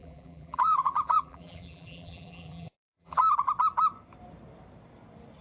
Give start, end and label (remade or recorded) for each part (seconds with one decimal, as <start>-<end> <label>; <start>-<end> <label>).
0.0-3.2 remade; 3.2-5.4 recorded